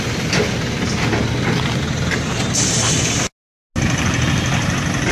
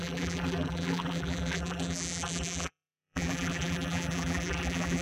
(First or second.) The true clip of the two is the first